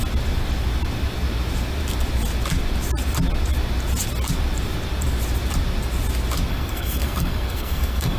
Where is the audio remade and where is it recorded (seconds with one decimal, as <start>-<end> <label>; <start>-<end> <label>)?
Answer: 0.0-6.5 recorded; 6.5-8.2 remade